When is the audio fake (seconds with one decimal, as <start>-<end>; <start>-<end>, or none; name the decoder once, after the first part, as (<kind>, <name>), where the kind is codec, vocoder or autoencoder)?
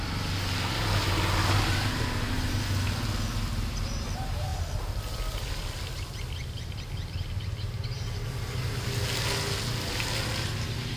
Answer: none